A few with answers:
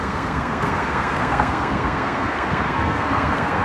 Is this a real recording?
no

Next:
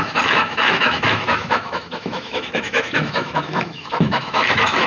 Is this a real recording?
no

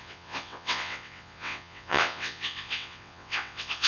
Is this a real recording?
no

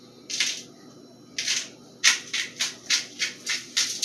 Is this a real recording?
yes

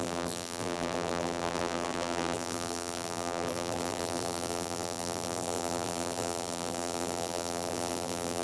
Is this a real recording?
no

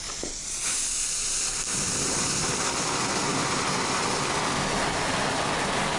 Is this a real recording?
yes